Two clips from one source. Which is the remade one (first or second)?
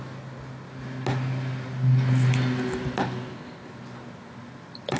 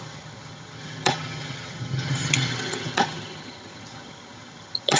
second